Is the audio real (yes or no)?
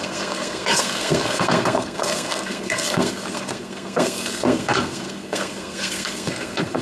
no